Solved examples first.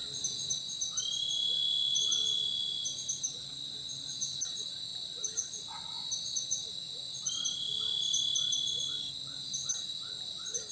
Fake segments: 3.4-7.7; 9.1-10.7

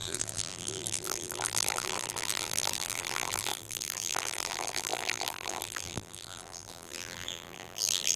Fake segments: 0.0-8.2

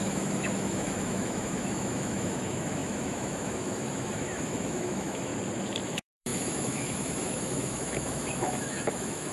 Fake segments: 0.0-5.3; 5.8-9.3

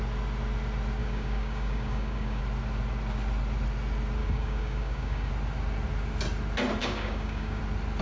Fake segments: 1.0-2.4; 4.2-5.3; 6.8-7.6

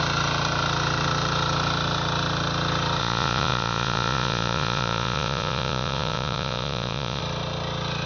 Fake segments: 3.0-7.2

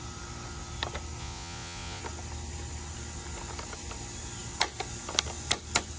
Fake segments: 1.2-2.0